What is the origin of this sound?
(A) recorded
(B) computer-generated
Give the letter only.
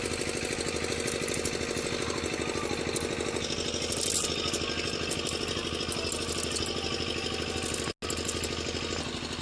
A